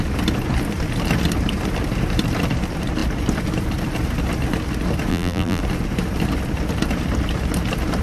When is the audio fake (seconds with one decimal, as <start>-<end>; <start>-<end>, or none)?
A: 5.1-5.6